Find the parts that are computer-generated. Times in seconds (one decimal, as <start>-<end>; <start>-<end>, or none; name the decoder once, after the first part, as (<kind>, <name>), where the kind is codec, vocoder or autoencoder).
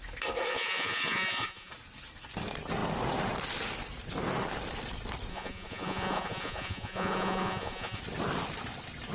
0.5-1.7 (vocoder, Vocos); 5.3-8.0